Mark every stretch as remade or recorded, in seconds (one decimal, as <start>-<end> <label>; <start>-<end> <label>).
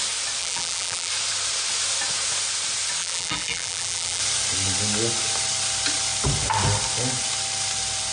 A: 0.0-0.4 recorded; 0.4-1.1 remade; 1.1-3.0 recorded; 3.0-4.2 remade; 4.2-8.1 recorded